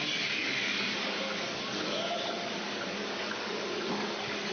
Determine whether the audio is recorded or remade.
remade